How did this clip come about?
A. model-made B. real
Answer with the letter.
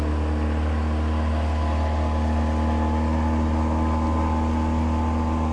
B